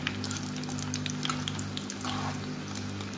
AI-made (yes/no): no